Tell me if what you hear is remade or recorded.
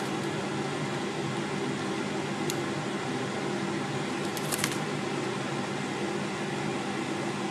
recorded